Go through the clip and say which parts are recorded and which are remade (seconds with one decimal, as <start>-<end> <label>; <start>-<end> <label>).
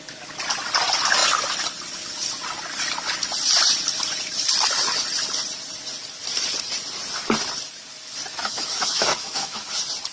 0.0-8.3 recorded; 8.3-9.7 remade; 9.7-10.1 recorded